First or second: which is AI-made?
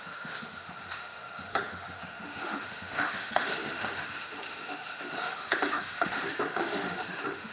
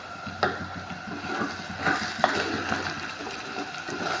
first